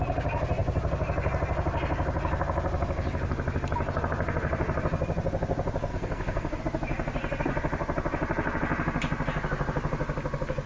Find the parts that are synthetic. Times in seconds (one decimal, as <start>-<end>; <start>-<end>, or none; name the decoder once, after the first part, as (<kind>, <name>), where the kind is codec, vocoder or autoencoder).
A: 5.9-6.6 (codec, SNAC)